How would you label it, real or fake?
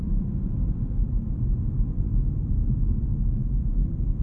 fake